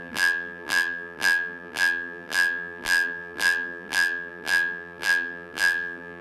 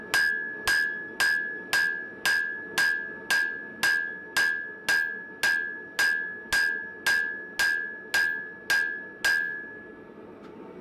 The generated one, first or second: first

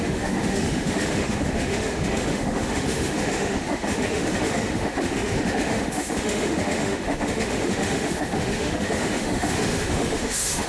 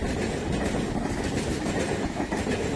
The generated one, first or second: first